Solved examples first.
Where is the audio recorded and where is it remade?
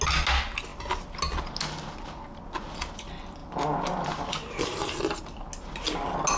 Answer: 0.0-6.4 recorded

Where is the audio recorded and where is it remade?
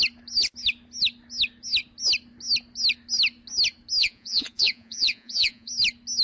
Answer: 0.0-4.0 recorded; 4.0-5.7 remade; 5.7-6.2 recorded